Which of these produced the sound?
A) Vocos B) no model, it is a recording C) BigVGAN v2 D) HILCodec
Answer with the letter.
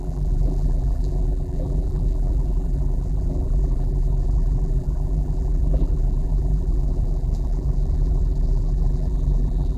C